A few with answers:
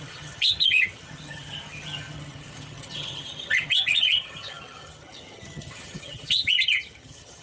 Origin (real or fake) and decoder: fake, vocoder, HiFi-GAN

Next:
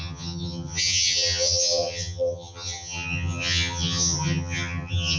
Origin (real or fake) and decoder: fake, vocoder, HiFi-GAN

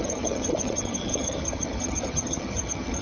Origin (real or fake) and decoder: fake, vocoder, HiFi-GAN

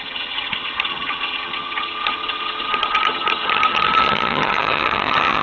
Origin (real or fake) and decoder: fake, vocoder, HiFi-GAN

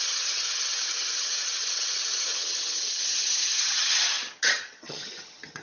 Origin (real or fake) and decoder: fake, vocoder, HiFi-GAN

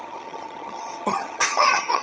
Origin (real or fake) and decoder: fake, vocoder, HiFi-GAN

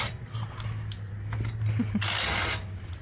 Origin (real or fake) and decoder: real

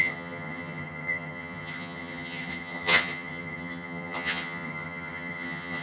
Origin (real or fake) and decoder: fake, vocoder, HiFi-GAN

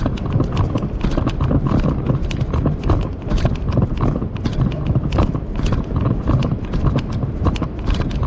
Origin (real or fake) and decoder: real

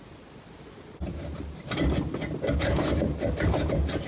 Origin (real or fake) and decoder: real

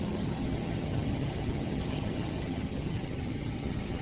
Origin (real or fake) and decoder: fake, vocoder, HiFi-GAN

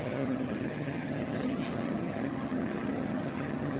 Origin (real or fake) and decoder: fake, vocoder, HiFi-GAN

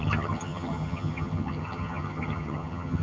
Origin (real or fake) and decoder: fake, vocoder, HiFi-GAN